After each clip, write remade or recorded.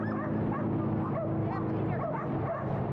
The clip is recorded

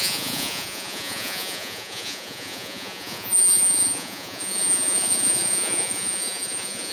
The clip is remade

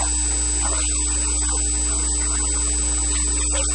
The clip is recorded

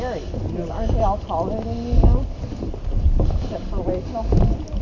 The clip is recorded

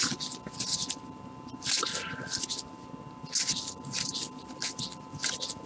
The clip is recorded